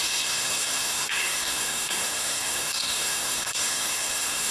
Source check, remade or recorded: remade